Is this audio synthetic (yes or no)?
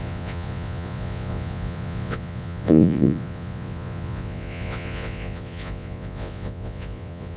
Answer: yes